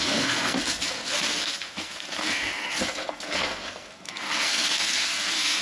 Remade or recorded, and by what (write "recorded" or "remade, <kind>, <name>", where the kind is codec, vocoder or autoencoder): remade, codec, SNAC